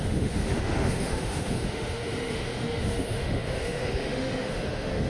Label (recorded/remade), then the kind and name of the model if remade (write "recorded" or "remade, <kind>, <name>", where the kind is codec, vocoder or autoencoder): remade, autoencoder, DAC-VAE